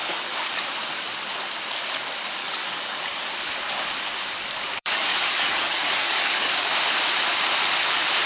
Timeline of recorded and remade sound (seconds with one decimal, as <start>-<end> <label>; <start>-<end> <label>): 0.0-0.6 remade; 0.6-2.4 recorded; 2.4-3.3 remade; 3.3-4.8 recorded; 4.8-6.7 remade; 6.7-8.3 recorded